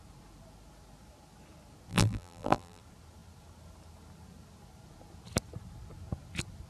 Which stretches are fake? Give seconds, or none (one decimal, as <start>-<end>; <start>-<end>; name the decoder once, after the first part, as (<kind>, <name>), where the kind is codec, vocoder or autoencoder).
1.9-2.8 (vocoder, BigVGAN v2)